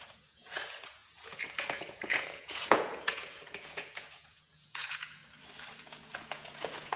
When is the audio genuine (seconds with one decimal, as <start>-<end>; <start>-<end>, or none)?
5.2-5.7